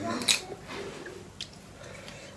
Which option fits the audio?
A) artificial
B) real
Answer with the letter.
B